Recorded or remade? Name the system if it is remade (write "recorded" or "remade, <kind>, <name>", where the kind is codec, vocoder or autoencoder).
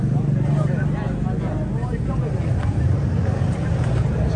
recorded